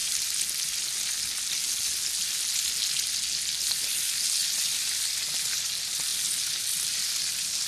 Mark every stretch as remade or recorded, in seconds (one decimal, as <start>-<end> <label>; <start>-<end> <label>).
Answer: 0.0-7.7 recorded